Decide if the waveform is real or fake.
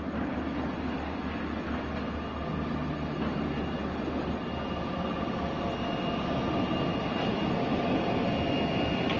real